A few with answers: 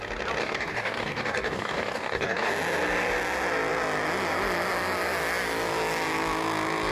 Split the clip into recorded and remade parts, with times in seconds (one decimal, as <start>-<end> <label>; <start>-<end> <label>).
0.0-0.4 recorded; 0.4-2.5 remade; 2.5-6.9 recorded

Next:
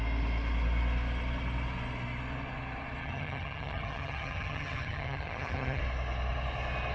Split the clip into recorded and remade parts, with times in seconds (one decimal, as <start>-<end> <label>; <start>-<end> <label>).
0.0-3.0 recorded; 3.0-5.8 remade; 5.8-6.9 recorded

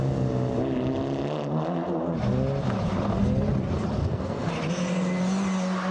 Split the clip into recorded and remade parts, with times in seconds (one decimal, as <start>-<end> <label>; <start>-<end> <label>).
0.0-4.0 recorded; 4.0-4.5 remade; 4.5-5.9 recorded

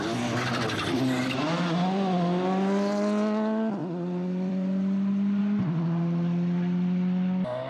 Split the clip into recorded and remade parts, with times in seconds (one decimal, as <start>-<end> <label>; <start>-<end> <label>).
0.0-3.8 recorded; 3.8-5.4 remade; 5.4-7.7 recorded

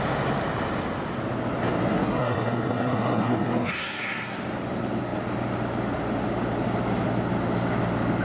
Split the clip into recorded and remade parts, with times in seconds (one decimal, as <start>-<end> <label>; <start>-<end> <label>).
0.0-1.9 recorded; 1.9-4.4 remade; 4.4-8.2 recorded